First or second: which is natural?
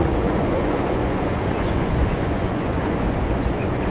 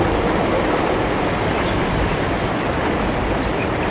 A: second